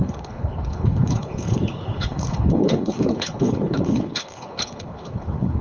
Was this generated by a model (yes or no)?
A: yes